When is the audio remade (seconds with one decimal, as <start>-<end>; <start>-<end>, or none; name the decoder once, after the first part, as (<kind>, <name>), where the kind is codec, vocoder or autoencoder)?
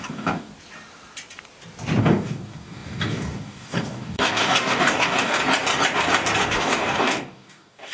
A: 0.0-0.5 (codec, DAC); 2.0-5.4; 6.4-7.9